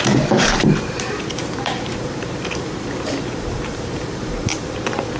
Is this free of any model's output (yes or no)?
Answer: no